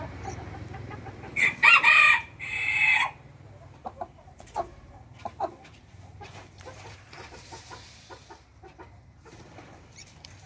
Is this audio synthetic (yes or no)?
yes